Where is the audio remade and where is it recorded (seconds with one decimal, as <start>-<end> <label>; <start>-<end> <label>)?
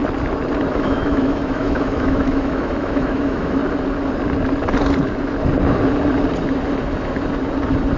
0.0-0.7 recorded; 0.7-3.6 remade; 3.6-8.0 recorded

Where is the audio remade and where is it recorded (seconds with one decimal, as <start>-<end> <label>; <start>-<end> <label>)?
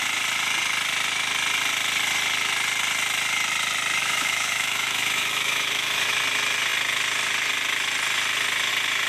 0.0-4.0 recorded; 4.0-6.2 remade; 6.2-9.1 recorded